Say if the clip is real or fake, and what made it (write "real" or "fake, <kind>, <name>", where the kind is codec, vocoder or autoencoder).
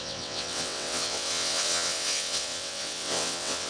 fake, vocoder, WaveNeXt